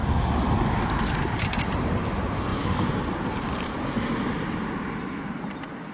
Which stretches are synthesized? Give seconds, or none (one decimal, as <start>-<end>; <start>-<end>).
none

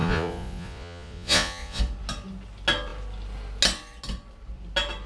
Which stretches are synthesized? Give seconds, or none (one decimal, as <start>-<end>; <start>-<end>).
0.0-1.8

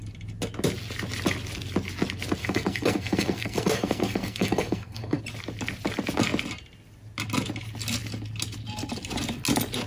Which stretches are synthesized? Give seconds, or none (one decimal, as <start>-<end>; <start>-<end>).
2.4-5.2

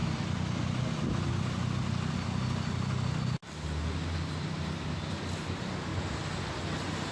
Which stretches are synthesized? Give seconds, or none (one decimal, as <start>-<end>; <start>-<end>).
4.2-5.9

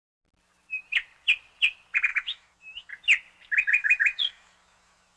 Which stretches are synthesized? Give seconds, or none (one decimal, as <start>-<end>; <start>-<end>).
2.1-2.9; 3.8-5.2

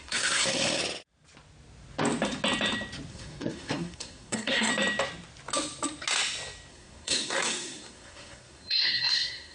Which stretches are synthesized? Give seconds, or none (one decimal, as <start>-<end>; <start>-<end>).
0.0-0.8; 3.1-4.7; 6.7-9.5

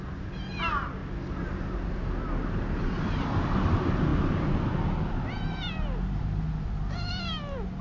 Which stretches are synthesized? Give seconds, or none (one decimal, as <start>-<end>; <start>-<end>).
none

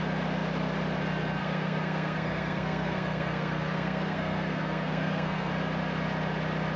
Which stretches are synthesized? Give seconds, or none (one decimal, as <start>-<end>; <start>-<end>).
1.4-5.5